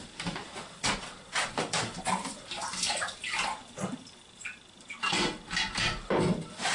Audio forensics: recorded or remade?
remade